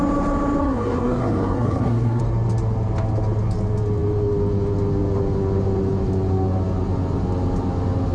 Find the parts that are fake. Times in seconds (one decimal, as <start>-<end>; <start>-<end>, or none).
0.6-2.2